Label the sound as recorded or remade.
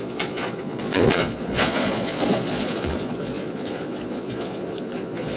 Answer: remade